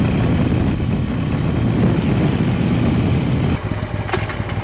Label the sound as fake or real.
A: real